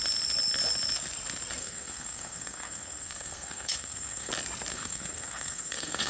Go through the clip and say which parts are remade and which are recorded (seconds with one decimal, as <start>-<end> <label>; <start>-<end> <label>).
0.0-1.6 recorded; 1.6-4.3 remade; 4.3-4.7 recorded; 4.7-6.1 remade

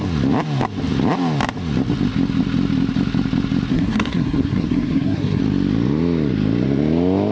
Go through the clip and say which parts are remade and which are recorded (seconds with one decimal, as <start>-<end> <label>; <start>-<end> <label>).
0.0-3.7 recorded; 3.7-5.4 remade; 5.4-7.3 recorded

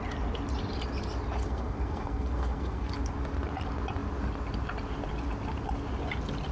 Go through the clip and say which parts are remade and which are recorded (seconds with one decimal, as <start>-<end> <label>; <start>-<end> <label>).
0.0-1.4 recorded; 1.4-2.9 remade; 2.9-6.5 recorded

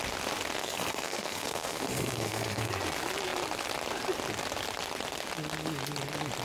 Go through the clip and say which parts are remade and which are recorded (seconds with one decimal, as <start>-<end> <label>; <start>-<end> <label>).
0.0-0.6 recorded; 0.6-2.7 remade; 2.7-6.4 recorded

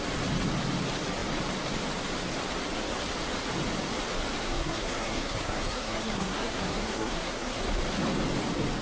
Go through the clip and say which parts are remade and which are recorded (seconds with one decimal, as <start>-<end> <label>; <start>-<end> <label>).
0.0-4.4 recorded; 4.4-7.6 remade; 7.6-8.8 recorded

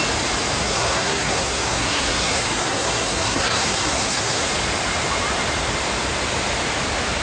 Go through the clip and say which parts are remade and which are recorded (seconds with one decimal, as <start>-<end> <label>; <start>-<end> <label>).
0.0-0.6 recorded; 0.6-4.5 remade; 4.5-7.2 recorded

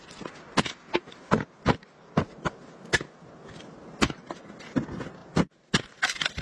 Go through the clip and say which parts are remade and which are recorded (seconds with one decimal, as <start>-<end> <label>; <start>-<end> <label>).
0.0-6.4 recorded